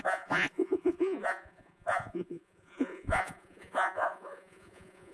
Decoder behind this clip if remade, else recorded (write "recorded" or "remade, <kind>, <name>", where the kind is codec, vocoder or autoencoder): remade, vocoder, Vocos